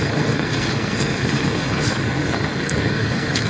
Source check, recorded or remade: remade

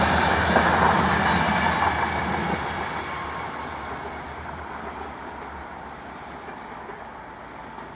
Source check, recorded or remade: recorded